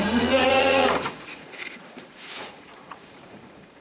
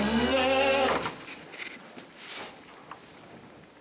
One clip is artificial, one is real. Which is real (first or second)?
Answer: second